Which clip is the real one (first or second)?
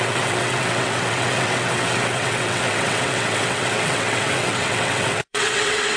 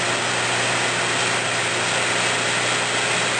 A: second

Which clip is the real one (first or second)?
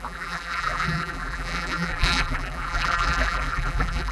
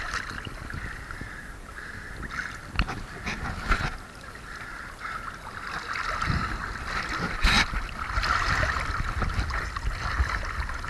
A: second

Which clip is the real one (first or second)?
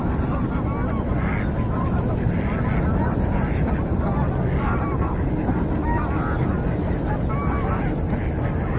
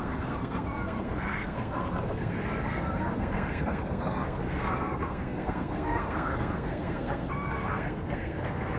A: first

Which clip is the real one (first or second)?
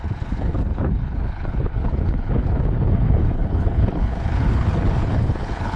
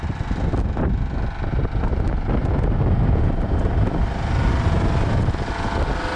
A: second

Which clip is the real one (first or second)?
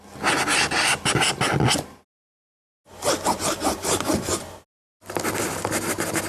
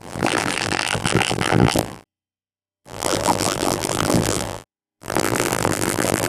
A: first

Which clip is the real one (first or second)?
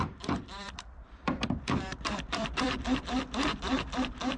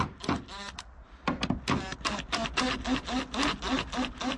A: second